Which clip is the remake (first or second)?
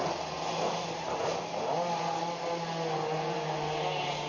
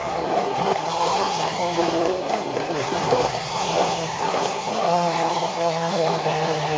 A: second